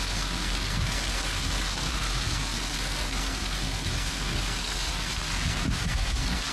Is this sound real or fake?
fake